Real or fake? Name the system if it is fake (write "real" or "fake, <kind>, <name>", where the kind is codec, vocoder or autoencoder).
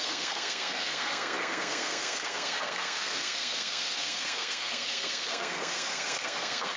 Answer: fake, codec, SNAC